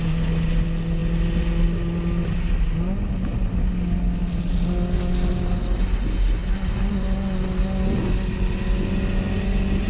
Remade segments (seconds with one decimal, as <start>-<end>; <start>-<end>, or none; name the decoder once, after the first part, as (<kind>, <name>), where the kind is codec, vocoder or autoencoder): none